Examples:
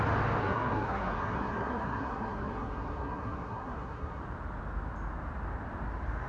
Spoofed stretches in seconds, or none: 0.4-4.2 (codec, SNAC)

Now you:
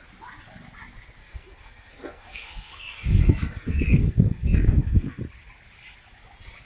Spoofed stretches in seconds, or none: 1.2-5.2 (codec, SNAC)

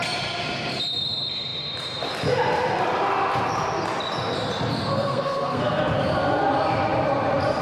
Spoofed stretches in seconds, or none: 4.9-5.8 (codec, SNAC)

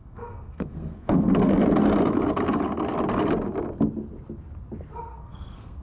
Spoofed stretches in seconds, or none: 0.0-1.5 (codec, SNAC); 5.0-5.8